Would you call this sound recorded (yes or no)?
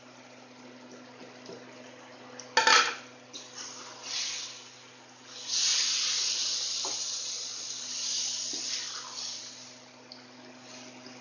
yes